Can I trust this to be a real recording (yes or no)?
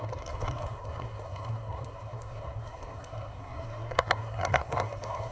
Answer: no